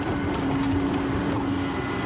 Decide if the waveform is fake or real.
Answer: fake